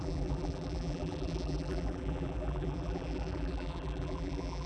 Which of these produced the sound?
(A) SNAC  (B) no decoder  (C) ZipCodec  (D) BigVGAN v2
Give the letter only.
D